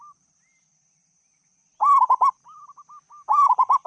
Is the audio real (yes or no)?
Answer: yes